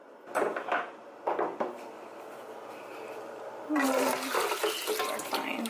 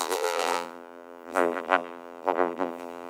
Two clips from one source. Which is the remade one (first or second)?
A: second